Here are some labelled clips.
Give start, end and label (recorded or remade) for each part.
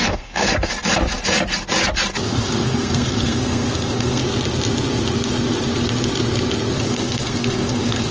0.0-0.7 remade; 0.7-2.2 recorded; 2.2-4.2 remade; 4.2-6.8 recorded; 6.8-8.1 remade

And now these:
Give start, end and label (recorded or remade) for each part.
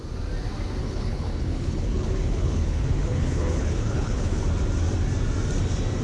0.0-0.8 recorded; 0.8-4.4 remade; 4.4-6.0 recorded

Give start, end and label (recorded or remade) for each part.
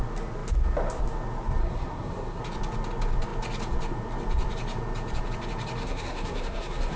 0.0-1.6 recorded; 1.6-2.4 remade; 2.4-5.8 recorded; 5.8-7.0 remade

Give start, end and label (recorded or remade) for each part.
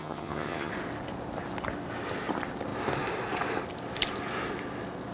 0.0-0.7 remade; 0.7-5.1 recorded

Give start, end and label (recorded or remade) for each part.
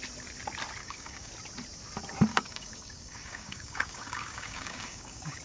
0.0-0.8 recorded; 0.8-1.3 remade; 1.3-2.3 recorded; 2.3-5.4 remade